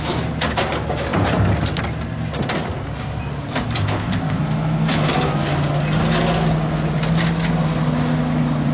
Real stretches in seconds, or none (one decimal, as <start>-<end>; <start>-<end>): 0.0-3.8; 4.4-8.7